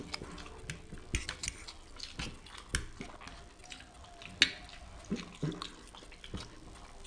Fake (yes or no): no